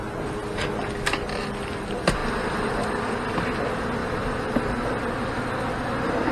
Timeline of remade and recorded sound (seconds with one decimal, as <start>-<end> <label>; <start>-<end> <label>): 0.0-2.2 recorded; 2.2-3.0 remade; 3.0-4.0 recorded; 4.0-4.6 remade; 4.6-6.3 recorded